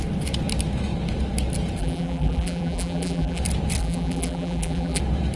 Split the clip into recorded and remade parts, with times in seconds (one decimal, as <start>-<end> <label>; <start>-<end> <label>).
0.0-1.8 recorded; 1.8-3.4 remade; 3.4-3.8 recorded; 3.8-5.0 remade; 5.0-5.4 recorded